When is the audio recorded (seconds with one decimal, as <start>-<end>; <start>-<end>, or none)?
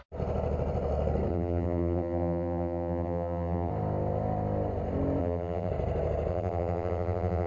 0.0-1.3; 3.7-5.2; 5.7-6.3